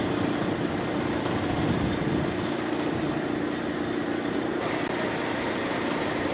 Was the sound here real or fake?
real